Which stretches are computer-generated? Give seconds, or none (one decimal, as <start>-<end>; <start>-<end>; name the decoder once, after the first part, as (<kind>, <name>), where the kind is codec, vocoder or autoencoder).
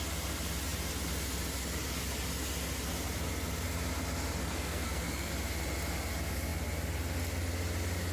4.4-5.3 (codec, SNAC)